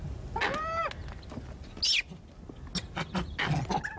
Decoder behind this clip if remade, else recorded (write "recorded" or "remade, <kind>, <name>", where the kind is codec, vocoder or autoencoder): recorded